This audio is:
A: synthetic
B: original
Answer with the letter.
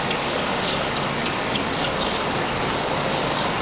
A